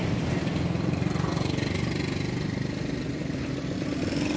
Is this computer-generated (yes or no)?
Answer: no